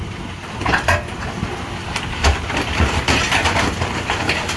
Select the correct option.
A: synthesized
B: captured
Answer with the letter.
A